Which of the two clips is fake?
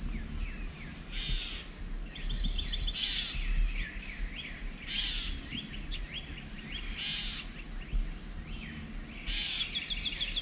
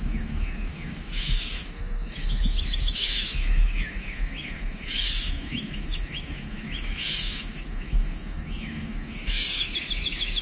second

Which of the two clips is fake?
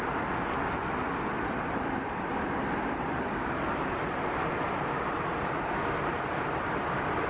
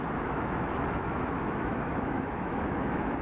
second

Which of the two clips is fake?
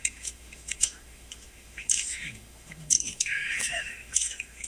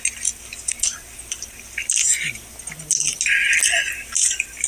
first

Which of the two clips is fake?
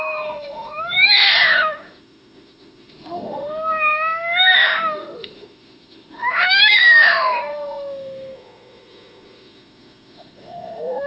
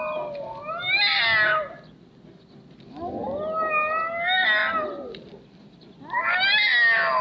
first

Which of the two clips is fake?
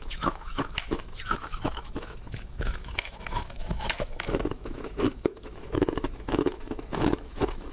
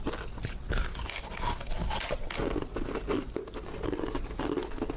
first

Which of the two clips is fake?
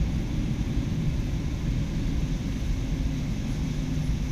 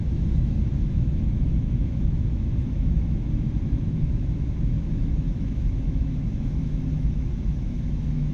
second